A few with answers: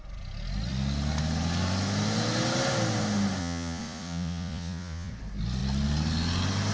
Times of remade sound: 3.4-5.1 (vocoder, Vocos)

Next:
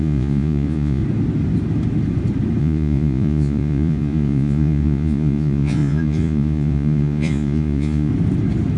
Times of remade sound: 0.0-1.0 (vocoder, Vocos); 2.6-8.1

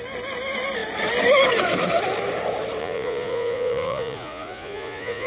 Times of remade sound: 2.8-5.3 (vocoder, Vocos)

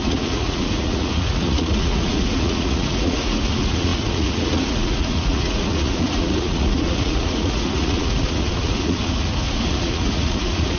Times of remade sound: 0.0-10.8 (vocoder, Vocos)

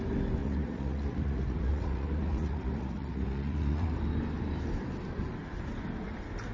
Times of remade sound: 0.4-3.9 (vocoder, Vocos)

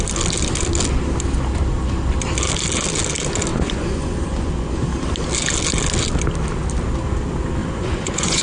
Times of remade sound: 3.5-4.8 (vocoder, Vocos); 7.6-8.4